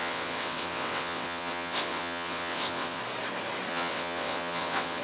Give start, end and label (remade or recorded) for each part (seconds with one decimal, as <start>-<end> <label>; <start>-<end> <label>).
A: 0.0-3.0 remade; 3.0-3.7 recorded; 3.7-5.0 remade